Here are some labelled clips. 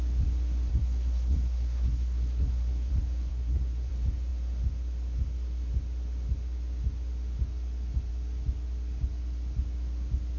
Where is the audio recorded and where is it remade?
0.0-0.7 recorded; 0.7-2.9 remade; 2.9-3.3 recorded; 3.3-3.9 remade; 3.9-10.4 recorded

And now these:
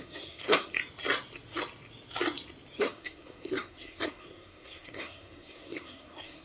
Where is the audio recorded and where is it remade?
0.0-0.8 remade; 0.8-2.8 recorded; 2.8-6.4 remade

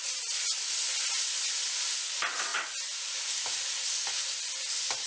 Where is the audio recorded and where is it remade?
0.0-5.1 recorded

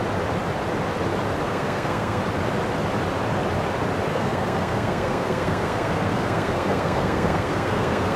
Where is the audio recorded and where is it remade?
0.0-1.4 recorded; 1.4-2.2 remade; 2.2-4.1 recorded; 4.1-8.2 remade

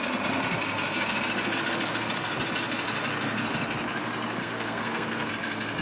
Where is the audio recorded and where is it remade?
0.0-4.4 recorded; 4.4-5.3 remade; 5.3-5.8 recorded